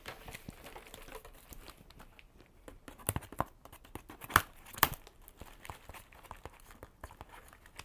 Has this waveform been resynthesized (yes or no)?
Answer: no